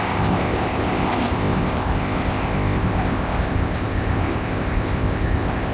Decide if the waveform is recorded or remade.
remade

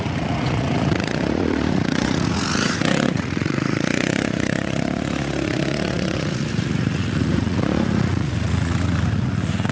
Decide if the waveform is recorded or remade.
remade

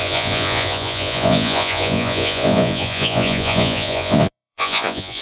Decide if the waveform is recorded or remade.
remade